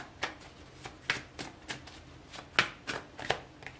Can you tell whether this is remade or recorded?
recorded